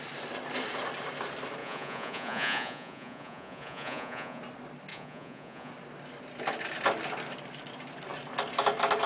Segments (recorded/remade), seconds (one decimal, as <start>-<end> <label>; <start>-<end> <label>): 0.0-1.6 recorded; 1.6-4.4 remade; 4.4-4.9 recorded; 4.9-5.7 remade; 5.7-9.1 recorded